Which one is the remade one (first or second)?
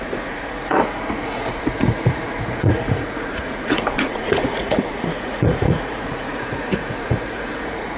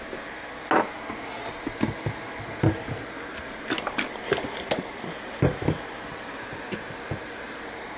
first